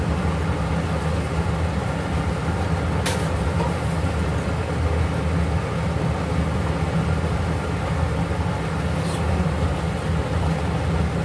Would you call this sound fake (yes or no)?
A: no